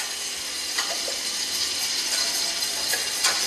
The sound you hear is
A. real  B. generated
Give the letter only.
A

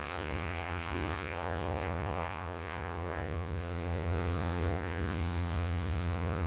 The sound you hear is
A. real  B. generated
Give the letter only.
B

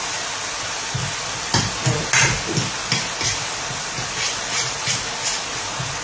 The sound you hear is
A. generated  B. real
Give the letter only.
B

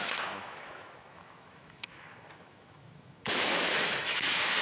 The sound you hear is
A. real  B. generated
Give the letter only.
B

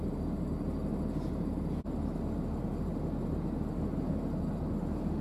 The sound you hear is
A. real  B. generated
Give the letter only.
A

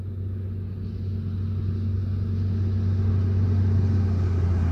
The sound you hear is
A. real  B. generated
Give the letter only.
A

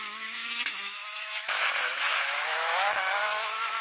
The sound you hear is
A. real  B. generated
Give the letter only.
B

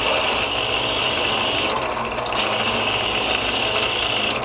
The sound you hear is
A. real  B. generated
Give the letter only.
A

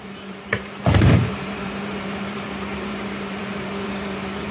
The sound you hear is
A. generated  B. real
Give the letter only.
A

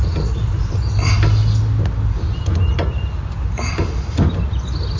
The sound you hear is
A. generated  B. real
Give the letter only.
B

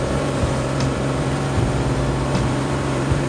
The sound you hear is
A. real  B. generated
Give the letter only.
B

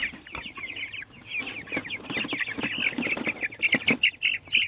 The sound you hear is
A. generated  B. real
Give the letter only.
B